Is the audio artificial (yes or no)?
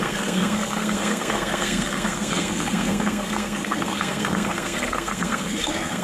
yes